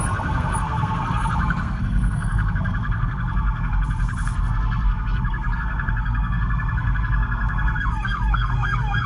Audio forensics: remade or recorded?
remade